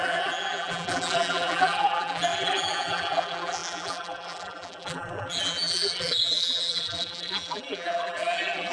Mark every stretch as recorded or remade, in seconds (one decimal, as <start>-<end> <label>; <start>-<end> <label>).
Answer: 0.0-8.7 remade